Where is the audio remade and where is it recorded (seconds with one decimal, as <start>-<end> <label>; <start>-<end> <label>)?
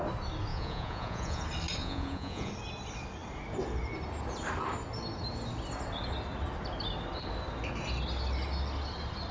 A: 0.0-0.5 recorded; 0.5-1.4 remade; 1.4-1.8 recorded; 1.8-2.5 remade; 2.5-9.3 recorded